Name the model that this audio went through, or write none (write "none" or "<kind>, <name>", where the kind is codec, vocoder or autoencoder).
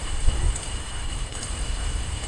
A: codec, SNAC